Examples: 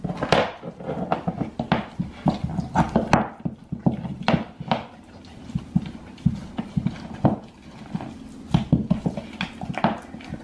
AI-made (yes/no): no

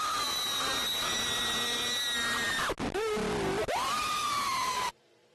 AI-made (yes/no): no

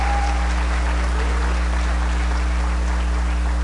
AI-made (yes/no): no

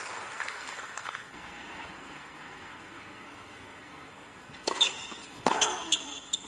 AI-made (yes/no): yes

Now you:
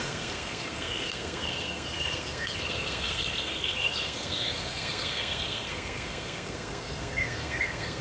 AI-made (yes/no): yes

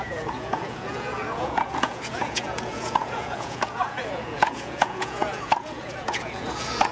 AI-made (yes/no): yes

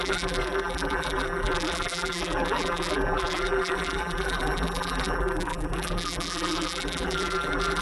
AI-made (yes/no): yes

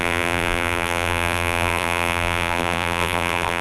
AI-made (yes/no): yes